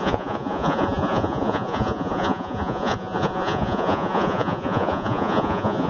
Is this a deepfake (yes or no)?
yes